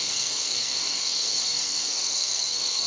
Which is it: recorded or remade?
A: remade